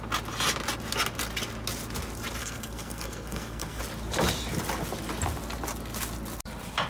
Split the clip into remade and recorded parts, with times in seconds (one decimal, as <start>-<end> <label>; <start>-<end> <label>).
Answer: 0.0-2.4 recorded; 2.4-3.8 remade; 3.8-6.9 recorded